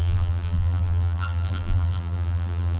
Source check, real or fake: fake